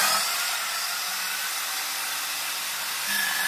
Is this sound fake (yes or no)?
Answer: no